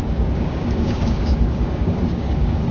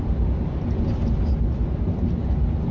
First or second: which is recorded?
second